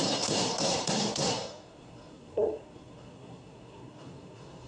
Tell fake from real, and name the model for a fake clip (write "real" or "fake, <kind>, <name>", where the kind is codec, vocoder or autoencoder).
fake, codec, SNAC